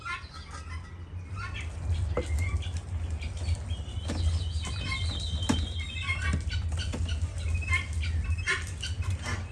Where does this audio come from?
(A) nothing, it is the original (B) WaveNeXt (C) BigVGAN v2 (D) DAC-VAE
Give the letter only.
A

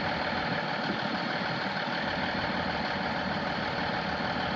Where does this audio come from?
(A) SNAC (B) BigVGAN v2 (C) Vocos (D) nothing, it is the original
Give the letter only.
D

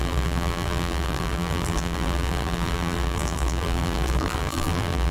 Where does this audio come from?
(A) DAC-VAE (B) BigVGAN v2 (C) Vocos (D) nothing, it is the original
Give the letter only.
B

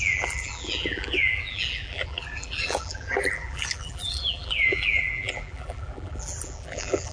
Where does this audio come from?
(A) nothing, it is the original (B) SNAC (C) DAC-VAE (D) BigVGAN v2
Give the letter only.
D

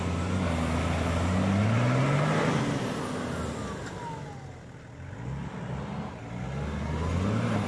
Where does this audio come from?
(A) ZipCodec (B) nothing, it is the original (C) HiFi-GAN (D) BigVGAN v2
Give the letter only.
B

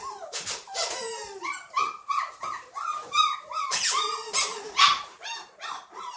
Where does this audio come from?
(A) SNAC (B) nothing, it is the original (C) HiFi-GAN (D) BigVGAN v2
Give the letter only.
D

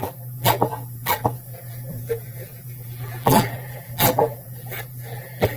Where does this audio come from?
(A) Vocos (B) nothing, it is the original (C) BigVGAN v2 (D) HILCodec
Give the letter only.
C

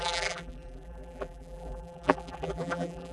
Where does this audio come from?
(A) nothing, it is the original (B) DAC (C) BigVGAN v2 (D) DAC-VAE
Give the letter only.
C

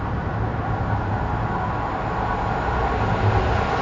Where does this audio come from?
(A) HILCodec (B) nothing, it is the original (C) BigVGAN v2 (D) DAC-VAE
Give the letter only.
B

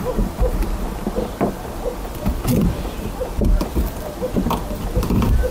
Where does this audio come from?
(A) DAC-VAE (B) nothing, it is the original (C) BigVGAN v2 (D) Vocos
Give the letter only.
C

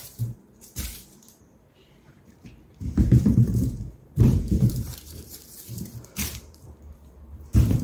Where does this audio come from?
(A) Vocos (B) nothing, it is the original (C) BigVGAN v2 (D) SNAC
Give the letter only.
C